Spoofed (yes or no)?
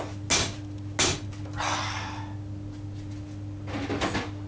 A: no